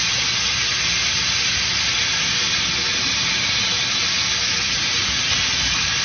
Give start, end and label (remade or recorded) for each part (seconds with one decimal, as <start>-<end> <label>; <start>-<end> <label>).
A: 0.0-6.0 recorded